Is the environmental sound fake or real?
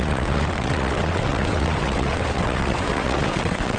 fake